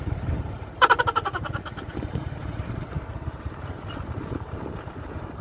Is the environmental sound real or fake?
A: fake